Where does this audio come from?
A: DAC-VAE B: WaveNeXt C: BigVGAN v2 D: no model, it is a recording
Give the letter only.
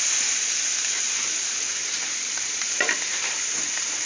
C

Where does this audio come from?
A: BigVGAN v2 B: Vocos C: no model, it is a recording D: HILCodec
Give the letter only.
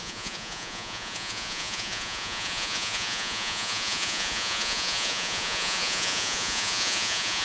B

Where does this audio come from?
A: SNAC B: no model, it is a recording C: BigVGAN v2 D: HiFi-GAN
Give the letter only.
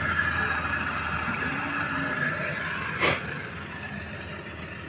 B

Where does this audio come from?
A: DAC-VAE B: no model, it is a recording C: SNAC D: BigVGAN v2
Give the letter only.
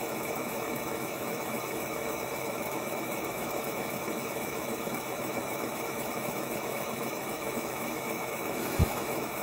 A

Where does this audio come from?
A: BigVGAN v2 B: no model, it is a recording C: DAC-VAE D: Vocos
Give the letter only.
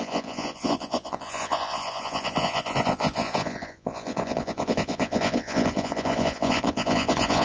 D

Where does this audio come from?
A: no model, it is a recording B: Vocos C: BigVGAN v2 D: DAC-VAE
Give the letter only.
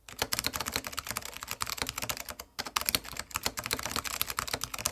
A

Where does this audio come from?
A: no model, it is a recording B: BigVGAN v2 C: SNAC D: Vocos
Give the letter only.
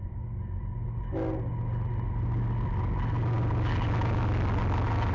A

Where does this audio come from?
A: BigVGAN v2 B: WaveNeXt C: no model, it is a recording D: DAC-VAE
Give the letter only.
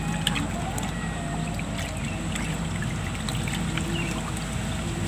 C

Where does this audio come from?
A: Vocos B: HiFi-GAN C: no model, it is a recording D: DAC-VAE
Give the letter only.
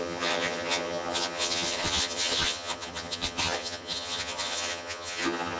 B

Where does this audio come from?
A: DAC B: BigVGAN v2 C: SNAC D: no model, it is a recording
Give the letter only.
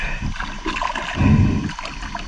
D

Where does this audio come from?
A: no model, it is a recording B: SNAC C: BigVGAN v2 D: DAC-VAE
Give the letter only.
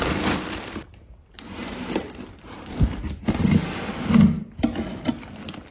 A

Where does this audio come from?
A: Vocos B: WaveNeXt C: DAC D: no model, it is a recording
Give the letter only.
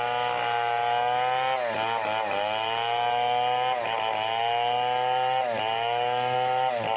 D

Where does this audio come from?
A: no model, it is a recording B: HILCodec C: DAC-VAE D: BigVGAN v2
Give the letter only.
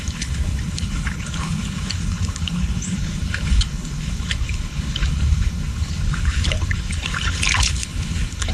B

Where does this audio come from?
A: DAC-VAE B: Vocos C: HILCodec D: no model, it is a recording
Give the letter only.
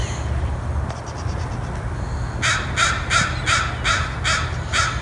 D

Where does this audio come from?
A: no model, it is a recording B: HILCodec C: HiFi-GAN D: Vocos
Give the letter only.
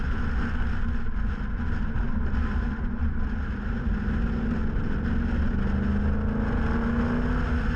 A